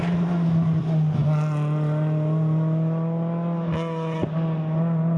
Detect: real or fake real